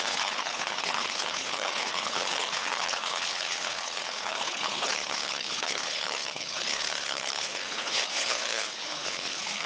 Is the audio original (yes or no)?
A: no